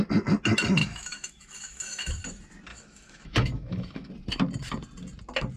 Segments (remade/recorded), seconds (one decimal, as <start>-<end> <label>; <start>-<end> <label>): 0.0-0.8 recorded; 0.8-2.1 remade; 2.1-2.7 recorded; 2.7-4.1 remade; 4.1-5.6 recorded